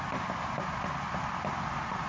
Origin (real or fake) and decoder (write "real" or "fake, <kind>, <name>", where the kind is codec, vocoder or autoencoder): real